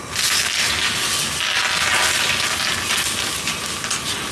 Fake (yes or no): no